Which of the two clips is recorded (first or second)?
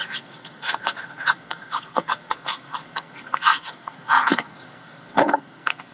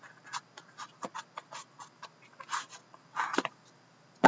second